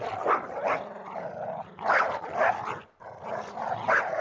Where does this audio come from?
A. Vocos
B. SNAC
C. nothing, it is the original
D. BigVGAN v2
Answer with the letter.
C